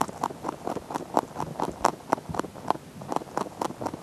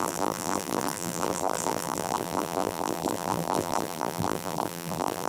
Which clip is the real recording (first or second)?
first